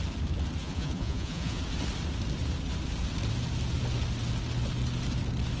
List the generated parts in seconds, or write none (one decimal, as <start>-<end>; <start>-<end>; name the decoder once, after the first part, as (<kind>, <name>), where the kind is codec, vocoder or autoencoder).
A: 0.6-1.6 (vocoder, Vocos)